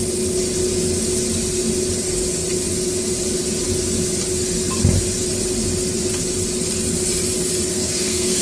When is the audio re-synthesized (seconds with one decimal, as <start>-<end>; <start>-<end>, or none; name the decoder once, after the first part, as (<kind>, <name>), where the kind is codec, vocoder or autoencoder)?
7.7-8.4 (codec, SNAC)